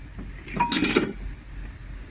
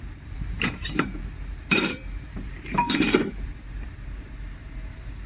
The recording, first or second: first